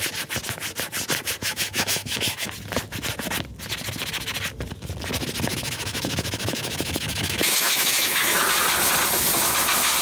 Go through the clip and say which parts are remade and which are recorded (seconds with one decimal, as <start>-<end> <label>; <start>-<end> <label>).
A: 0.0-1.4 recorded; 1.4-2.5 remade; 2.5-5.5 recorded; 5.5-8.4 remade; 8.4-10.0 recorded